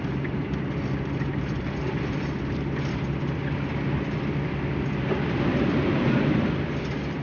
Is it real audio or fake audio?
fake